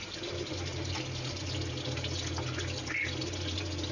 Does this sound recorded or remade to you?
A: recorded